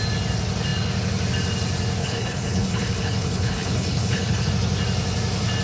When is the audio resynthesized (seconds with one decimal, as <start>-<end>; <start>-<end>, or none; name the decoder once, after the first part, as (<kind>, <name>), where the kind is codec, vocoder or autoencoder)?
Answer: 2.0-4.5 (codec, HILCodec)